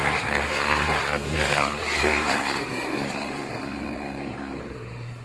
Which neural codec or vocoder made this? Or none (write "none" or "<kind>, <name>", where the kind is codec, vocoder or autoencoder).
codec, SNAC